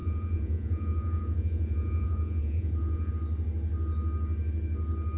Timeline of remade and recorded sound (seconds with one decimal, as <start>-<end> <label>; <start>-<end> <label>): 0.0-3.1 remade; 3.1-5.2 recorded

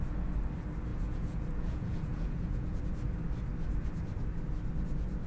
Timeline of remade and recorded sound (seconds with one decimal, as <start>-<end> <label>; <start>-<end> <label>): 0.0-0.9 recorded; 0.9-2.8 remade; 2.8-5.3 recorded

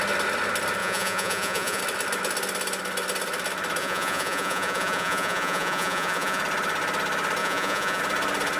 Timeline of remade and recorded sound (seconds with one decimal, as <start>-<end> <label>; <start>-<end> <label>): 0.0-0.8 recorded; 0.8-1.8 remade; 1.8-3.8 recorded; 3.8-6.4 remade; 6.4-7.4 recorded; 7.4-8.0 remade; 8.0-8.6 recorded

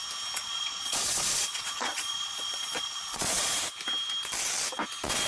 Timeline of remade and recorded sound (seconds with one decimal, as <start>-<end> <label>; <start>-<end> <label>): 0.0-0.4 recorded; 0.4-3.6 remade; 3.6-5.3 recorded

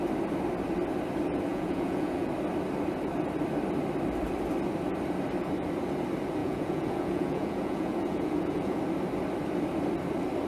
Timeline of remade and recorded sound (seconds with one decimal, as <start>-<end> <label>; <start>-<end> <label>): 0.0-1.5 recorded; 1.5-2.3 remade; 2.3-6.4 recorded; 6.4-8.8 remade; 8.8-10.5 recorded

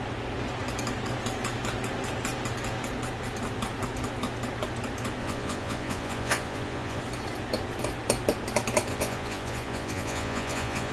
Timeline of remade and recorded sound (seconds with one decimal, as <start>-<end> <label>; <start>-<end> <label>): 0.0-5.2 recorded; 5.2-7.0 remade; 7.0-8.9 recorded; 8.9-10.9 remade

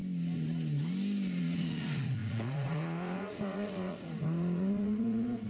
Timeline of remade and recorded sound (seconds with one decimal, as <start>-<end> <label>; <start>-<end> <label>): 0.0-1.4 recorded; 1.4-5.5 remade